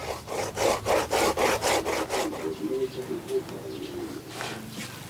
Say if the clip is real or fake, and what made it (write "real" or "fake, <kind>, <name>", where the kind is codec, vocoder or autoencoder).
real